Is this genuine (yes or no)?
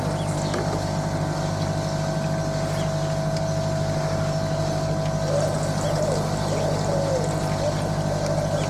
yes